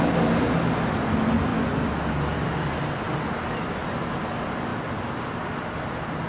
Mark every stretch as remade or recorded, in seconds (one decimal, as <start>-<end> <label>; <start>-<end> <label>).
0.0-6.3 recorded